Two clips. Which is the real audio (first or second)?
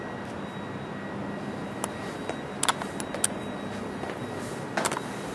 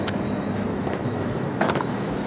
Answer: first